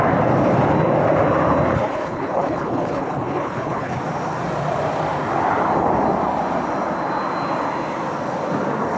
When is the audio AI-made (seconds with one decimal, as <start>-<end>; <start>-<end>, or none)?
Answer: 1.7-4.0